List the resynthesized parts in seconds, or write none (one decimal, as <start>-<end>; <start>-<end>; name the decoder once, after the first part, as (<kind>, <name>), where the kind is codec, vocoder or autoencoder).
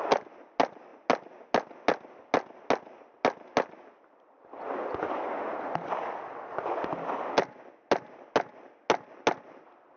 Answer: none